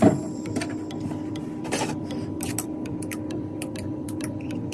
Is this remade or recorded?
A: remade